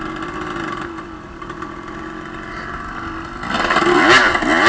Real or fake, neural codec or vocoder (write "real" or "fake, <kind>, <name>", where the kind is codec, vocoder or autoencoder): real